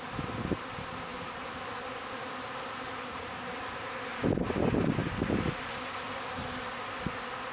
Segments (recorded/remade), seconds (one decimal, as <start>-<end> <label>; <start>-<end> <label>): 0.0-1.1 recorded; 1.1-1.6 remade; 1.6-3.1 recorded; 3.1-4.1 remade; 4.1-7.5 recorded